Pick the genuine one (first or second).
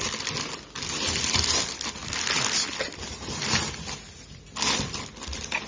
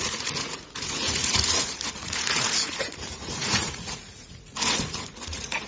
first